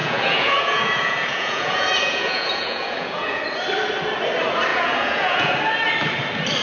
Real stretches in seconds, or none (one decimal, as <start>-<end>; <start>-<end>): 3.4-4.7; 5.5-6.6